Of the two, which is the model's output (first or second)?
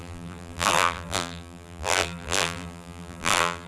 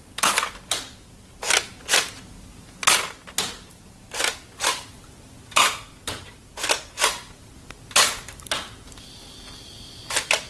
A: first